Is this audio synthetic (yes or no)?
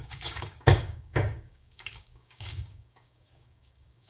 yes